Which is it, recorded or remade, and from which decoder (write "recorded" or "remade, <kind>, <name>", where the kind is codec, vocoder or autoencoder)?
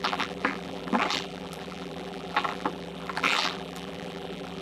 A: remade, vocoder, BigVGAN v2